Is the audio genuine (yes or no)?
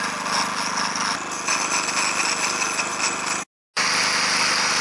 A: yes